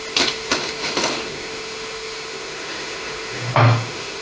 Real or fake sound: fake